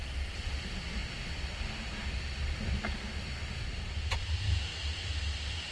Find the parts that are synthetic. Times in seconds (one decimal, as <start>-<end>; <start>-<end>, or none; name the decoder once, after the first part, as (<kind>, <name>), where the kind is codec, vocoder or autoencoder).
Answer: none